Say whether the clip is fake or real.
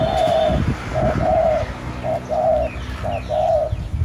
real